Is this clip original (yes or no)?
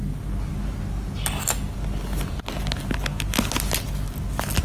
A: yes